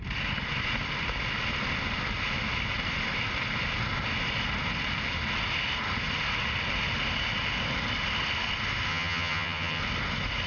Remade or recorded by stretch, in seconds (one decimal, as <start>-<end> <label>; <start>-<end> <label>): 0.0-8.9 recorded; 8.9-9.8 remade; 9.8-10.5 recorded